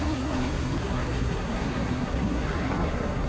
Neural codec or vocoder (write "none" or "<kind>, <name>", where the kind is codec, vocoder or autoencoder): codec, SNAC